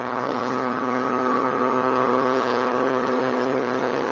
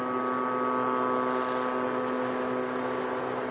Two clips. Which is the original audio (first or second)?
second